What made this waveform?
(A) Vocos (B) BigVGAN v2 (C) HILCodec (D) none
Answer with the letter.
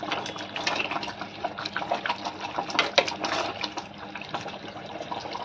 D